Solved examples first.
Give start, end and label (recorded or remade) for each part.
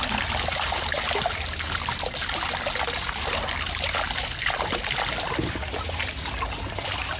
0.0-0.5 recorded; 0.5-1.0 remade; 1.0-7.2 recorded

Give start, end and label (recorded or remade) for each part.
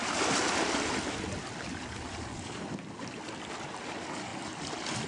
0.0-5.1 recorded